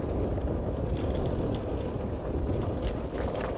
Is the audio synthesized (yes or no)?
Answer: yes